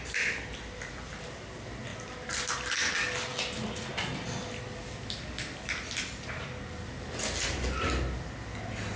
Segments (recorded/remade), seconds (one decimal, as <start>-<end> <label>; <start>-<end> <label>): 0.0-9.0 recorded